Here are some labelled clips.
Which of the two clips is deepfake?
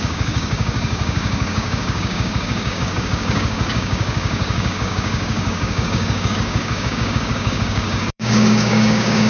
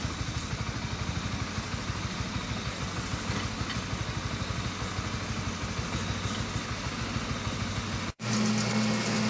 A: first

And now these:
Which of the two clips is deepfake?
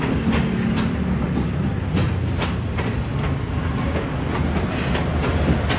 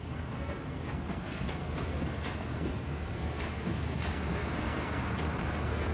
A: second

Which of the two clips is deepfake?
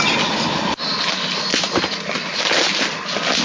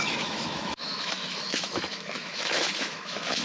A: second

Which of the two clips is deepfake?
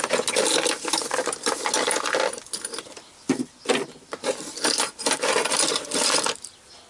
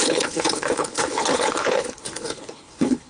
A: second